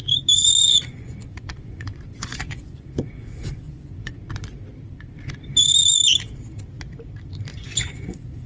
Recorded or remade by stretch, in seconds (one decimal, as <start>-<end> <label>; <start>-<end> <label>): 0.0-0.6 recorded; 0.6-4.2 remade; 4.2-7.5 recorded; 7.5-8.5 remade